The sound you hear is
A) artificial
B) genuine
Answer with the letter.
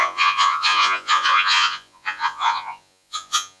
A